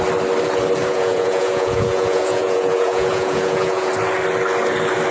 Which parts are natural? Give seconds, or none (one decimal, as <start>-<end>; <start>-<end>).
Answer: 0.0-0.8; 3.9-5.1